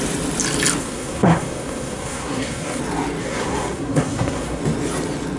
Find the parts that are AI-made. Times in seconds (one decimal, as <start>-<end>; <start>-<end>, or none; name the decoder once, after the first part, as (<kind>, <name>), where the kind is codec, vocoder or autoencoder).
0.8-2.8 (codec, SNAC); 3.2-4.6